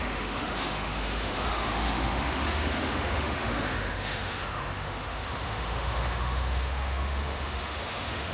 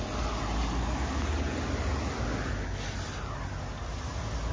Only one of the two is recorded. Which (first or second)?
second